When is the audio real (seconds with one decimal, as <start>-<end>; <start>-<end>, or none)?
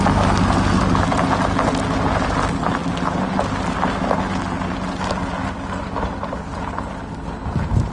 0.0-7.9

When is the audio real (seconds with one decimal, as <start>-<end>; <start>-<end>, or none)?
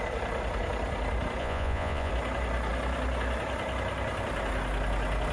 0.0-1.4; 2.1-5.3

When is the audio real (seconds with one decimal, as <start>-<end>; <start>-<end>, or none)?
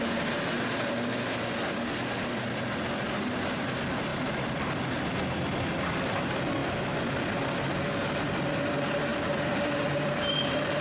0.0-9.1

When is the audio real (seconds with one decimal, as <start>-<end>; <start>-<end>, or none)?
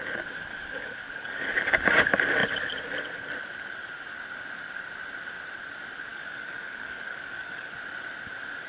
0.0-0.5; 2.0-6.1; 7.7-8.7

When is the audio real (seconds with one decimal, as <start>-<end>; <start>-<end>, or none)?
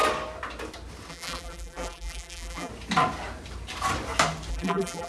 0.0-1.1; 2.7-4.5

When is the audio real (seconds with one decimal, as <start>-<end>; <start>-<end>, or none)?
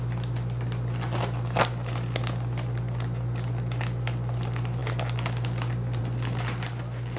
0.0-7.2